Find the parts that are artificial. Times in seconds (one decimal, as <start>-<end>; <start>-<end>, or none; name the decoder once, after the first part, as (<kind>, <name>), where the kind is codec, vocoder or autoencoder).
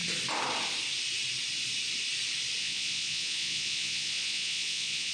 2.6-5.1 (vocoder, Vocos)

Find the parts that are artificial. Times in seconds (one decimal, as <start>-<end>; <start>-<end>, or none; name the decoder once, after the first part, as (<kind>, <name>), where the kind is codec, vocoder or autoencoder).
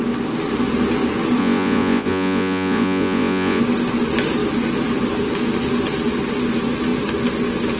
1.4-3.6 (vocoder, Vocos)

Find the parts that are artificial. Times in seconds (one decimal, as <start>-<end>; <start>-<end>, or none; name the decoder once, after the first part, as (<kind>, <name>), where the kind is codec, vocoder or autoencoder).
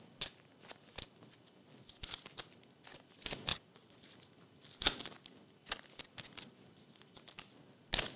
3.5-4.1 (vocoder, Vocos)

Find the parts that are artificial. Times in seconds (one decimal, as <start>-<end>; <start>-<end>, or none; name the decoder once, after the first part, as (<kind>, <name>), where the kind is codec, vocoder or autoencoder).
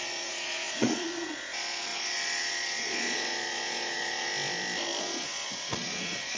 0.0-4.3 (vocoder, Vocos); 5.0-6.4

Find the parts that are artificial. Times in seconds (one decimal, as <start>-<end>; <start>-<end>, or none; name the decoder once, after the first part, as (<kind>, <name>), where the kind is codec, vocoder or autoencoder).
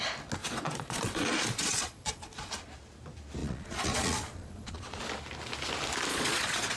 0.4-2.5 (vocoder, Vocos); 3.4-5.0; 6.1-6.8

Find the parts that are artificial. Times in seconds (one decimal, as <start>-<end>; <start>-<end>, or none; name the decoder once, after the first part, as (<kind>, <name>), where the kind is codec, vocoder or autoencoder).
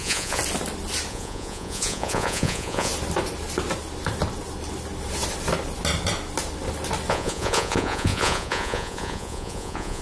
0.0-0.4 (vocoder, Vocos); 1.1-2.9; 7.1-10.0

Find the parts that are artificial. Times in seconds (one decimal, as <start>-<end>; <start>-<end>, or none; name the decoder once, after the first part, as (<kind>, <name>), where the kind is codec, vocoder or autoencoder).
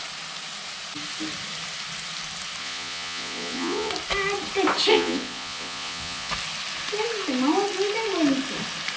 2.6-3.9 (vocoder, Vocos); 4.9-6.3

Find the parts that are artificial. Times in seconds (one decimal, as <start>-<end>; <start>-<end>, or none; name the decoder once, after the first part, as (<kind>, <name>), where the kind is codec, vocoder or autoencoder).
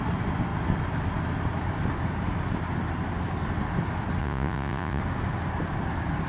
4.2-5.0 (vocoder, Vocos)